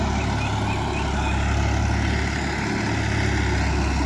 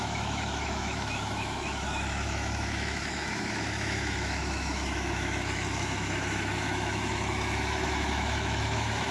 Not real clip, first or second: second